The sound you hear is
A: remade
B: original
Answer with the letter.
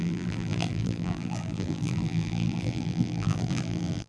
A